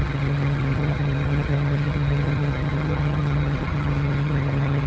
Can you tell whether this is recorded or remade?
remade